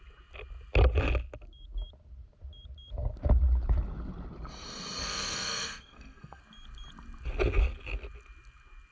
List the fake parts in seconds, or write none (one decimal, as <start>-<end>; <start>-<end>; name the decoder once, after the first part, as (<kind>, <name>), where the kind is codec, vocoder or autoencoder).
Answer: 5.0-6.4 (codec, SNAC)

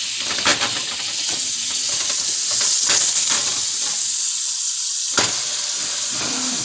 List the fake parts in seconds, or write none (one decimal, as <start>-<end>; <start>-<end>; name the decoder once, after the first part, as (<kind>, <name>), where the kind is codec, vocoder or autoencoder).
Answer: none

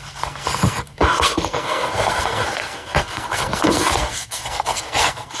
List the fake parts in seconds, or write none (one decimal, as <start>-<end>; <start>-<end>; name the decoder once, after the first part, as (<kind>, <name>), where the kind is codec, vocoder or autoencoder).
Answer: 0.0-5.4 (codec, SNAC)

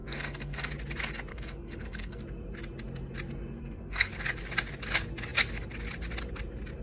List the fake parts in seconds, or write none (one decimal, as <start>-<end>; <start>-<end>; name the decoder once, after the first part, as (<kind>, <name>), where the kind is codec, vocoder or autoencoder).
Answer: 0.0-0.7 (codec, SNAC); 1.3-2.2; 3.6-4.1

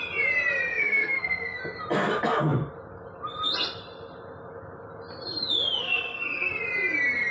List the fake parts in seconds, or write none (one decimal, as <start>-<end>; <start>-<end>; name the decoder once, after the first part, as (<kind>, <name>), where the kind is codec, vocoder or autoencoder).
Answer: 0.7-1.6 (codec, SNAC); 5.8-6.5

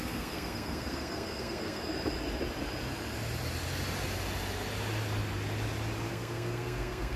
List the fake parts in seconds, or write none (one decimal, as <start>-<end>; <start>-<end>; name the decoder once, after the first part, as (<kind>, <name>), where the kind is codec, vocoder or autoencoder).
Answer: 0.0-1.8 (codec, SNAC); 6.1-7.2